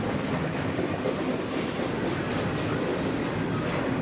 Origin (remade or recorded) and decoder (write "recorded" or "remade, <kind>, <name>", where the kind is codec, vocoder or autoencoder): recorded